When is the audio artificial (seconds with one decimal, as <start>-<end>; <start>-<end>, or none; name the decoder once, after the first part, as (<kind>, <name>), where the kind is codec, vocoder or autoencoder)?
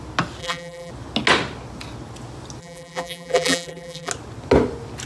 0.4-0.9 (vocoder, BigVGAN v2); 2.6-4.1